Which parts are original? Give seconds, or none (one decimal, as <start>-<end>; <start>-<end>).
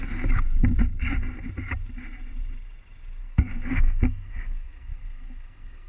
0.0-3.2